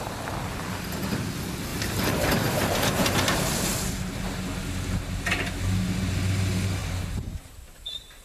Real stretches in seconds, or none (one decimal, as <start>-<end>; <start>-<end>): 0.0-1.7; 3.5-8.2